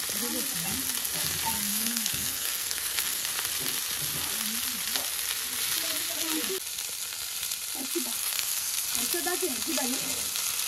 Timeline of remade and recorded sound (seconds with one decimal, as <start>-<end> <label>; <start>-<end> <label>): 0.0-1.7 recorded; 1.7-3.3 remade; 3.3-8.2 recorded; 8.2-8.9 remade; 8.9-10.7 recorded